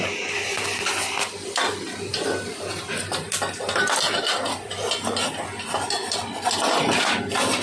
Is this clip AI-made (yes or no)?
no